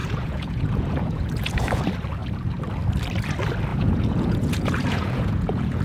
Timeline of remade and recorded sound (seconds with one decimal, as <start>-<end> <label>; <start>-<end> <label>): 0.0-1.8 remade; 1.8-3.7 recorded; 3.7-5.8 remade